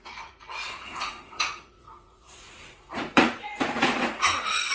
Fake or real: fake